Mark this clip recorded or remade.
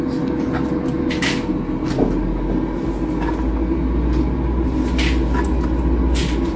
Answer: recorded